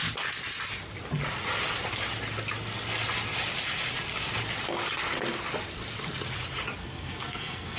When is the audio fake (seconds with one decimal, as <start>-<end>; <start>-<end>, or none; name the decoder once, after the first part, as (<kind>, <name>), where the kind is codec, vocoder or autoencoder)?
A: 6.8-7.8 (codec, SNAC)